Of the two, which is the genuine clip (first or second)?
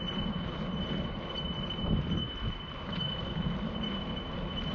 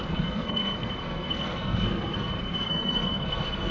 first